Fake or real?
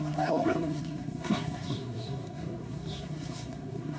fake